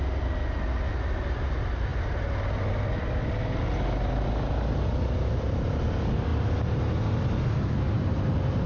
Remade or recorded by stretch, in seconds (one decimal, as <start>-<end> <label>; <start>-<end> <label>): 0.0-8.7 recorded